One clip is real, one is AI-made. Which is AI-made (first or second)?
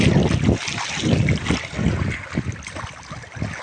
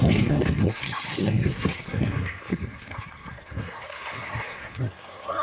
second